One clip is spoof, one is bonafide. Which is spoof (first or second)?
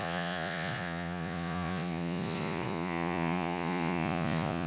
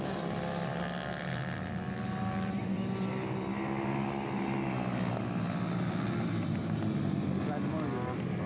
first